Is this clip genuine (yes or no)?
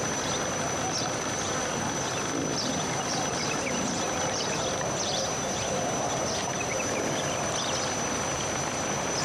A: no